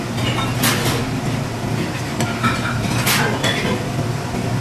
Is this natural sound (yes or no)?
yes